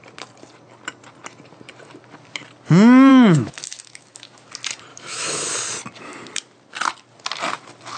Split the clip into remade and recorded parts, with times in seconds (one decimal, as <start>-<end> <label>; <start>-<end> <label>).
0.0-3.1 recorded; 3.1-4.5 remade; 4.5-4.9 recorded; 4.9-5.5 remade; 5.5-8.0 recorded